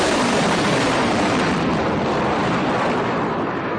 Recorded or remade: remade